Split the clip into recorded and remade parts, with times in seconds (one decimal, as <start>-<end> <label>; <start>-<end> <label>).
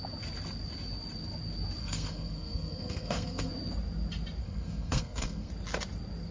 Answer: 0.0-1.8 recorded; 1.8-3.5 remade; 3.5-4.4 recorded; 4.4-5.5 remade; 5.5-6.3 recorded